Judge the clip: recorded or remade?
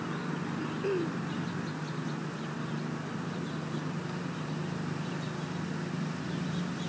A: recorded